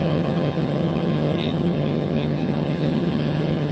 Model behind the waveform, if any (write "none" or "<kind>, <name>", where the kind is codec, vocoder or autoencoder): vocoder, HiFi-GAN